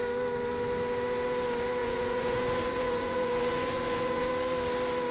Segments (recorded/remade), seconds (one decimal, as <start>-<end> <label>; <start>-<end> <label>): 0.0-1.8 recorded; 1.8-4.3 remade; 4.3-5.1 recorded